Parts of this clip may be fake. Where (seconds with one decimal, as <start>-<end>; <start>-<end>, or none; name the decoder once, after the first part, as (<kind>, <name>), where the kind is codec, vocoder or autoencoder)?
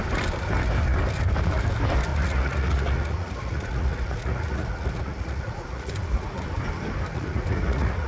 2.1-5.9 (vocoder, Vocos); 7.1-8.1